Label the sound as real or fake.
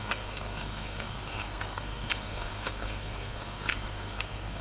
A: fake